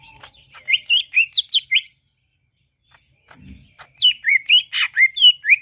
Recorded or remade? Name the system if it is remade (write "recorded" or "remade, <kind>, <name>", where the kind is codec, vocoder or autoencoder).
recorded